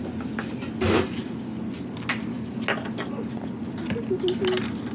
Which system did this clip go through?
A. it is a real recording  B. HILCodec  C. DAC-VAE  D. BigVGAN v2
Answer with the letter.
A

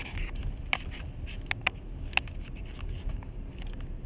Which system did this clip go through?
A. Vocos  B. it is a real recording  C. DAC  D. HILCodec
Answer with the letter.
B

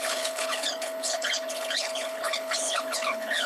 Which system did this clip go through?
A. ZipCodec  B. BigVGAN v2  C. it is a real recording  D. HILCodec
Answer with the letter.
D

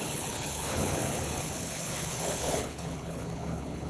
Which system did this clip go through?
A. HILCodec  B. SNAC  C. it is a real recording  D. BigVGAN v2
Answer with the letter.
A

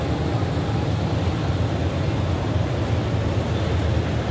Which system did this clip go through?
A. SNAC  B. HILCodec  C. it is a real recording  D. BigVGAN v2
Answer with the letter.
C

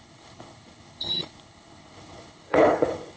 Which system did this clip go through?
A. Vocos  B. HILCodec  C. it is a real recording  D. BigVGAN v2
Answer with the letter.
B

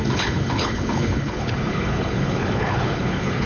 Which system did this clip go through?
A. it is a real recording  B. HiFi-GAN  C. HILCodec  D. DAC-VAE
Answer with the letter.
C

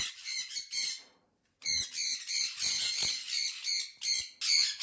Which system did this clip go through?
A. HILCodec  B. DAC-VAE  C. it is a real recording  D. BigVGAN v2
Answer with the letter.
C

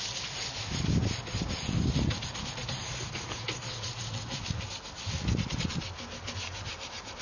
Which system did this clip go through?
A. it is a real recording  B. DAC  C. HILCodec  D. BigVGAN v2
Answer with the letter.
A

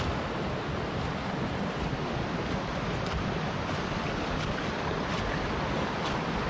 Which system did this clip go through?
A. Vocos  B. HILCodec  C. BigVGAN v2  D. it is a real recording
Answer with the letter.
D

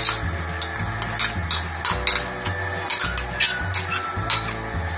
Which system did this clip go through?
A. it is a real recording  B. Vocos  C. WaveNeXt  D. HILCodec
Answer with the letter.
A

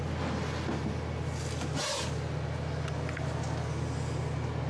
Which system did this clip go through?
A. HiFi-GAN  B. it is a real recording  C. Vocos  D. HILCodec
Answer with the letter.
B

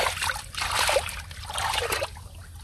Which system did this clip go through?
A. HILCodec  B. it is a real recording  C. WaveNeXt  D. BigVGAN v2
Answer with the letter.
B